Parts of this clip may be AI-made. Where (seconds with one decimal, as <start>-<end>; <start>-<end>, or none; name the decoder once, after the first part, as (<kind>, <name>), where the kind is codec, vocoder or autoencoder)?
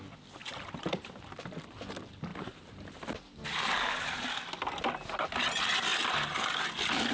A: 0.4-1.1 (vocoder, BigVGAN v2); 2.3-4.3